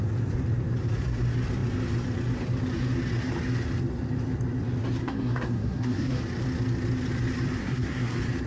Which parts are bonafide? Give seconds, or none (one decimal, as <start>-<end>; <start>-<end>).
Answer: 0.0-5.0; 6.2-7.6; 8.1-8.5